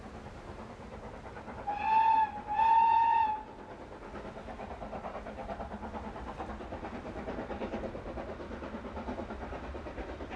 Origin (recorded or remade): recorded